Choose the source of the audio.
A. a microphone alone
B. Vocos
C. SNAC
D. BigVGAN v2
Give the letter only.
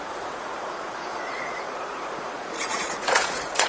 B